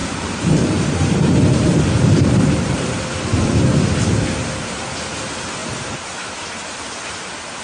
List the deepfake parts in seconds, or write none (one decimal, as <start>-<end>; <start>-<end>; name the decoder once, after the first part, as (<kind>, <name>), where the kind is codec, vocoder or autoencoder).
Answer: 0.0-2.9 (vocoder, BigVGAN v2); 5.6-7.6